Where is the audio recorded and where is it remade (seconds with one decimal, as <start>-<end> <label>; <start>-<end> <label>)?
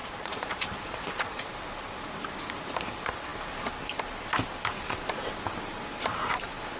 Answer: 0.0-1.5 remade; 1.5-6.8 recorded